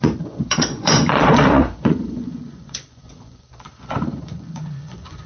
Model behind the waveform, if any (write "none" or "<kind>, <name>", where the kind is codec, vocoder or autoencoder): vocoder, Vocos